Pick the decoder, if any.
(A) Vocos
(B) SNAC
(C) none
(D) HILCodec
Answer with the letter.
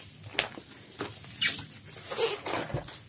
C